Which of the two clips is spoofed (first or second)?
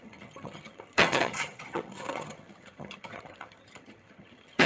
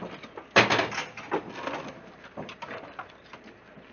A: first